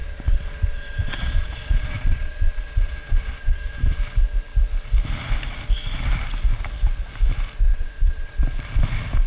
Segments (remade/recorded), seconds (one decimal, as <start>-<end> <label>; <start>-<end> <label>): 0.0-4.0 remade; 4.0-7.7 recorded; 7.7-8.4 remade; 8.4-9.3 recorded